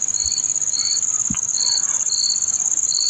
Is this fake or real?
real